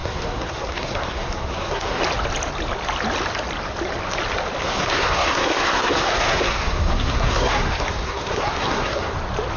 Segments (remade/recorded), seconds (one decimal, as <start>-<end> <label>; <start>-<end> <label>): 0.0-2.0 remade; 2.0-4.6 recorded; 4.6-9.1 remade; 9.1-9.6 recorded

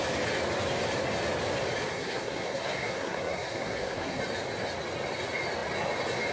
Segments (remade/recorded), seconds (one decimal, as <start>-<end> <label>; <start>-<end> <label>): 0.0-1.9 recorded; 1.9-4.2 remade; 4.2-6.3 recorded

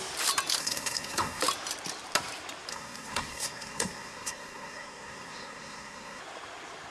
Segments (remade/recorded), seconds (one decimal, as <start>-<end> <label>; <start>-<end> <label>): 0.0-0.6 recorded; 0.6-1.4 remade; 1.4-2.7 recorded; 2.7-6.2 remade; 6.2-6.9 recorded

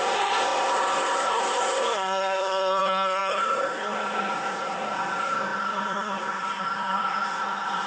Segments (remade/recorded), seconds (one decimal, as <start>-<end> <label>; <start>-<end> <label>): 0.0-7.9 remade

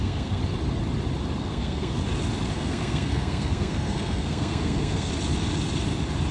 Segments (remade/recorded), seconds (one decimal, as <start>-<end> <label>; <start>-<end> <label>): 0.0-0.4 remade; 0.4-1.4 recorded; 1.4-2.0 remade; 2.0-2.5 recorded; 2.5-5.1 remade; 5.1-6.3 recorded

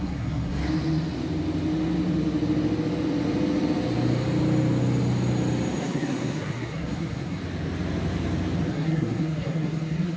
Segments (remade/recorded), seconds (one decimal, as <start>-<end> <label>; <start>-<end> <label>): 0.0-0.6 remade; 0.6-5.8 recorded; 5.8-7.4 remade; 7.4-8.7 recorded; 8.7-10.2 remade